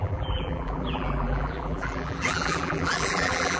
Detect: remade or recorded remade